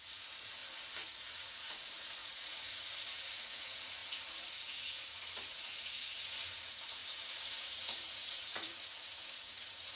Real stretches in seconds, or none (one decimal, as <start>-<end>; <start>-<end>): 0.6-1.2